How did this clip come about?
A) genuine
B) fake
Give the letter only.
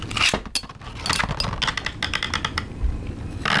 A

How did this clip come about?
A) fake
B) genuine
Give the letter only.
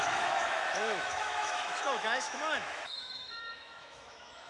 A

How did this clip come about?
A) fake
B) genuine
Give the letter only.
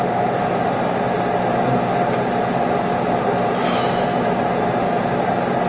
B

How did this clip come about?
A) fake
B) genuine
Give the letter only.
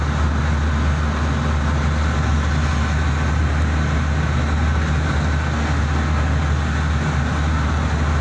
B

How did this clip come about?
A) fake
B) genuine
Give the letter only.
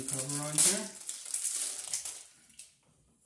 B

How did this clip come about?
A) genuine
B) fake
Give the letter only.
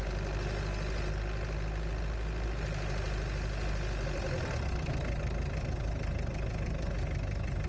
A